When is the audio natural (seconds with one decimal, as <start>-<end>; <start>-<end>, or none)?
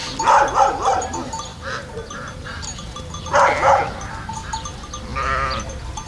1.5-3.2